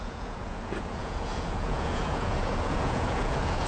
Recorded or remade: remade